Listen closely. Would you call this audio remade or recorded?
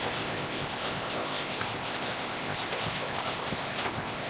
remade